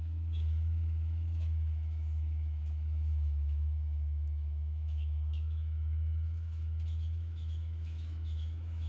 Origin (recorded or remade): remade